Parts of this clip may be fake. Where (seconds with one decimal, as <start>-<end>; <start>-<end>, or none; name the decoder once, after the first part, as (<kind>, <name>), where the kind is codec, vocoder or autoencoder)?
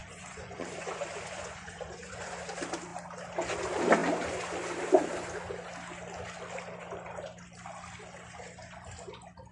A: 0.0-2.3 (vocoder, Vocos)